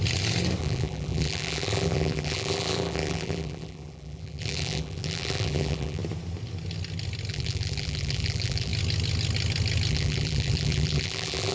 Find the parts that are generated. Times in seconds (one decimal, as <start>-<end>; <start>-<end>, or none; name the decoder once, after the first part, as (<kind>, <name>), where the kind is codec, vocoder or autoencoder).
0.6-6.0 (vocoder, BigVGAN v2); 7.3-8.7; 9.9-11.5